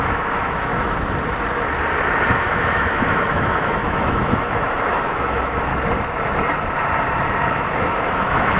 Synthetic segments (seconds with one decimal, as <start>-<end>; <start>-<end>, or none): 0.0-0.7; 2.3-5.7; 7.5-8.6